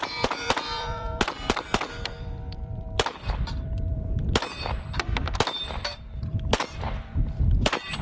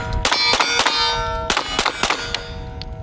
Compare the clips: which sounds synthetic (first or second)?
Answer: first